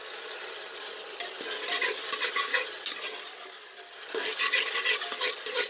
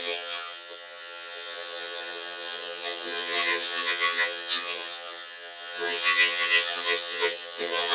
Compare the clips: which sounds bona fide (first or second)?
first